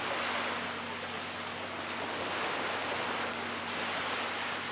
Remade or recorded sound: recorded